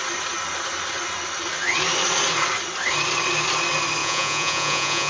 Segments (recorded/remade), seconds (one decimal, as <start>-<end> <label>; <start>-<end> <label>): 0.0-4.0 recorded; 4.0-5.1 remade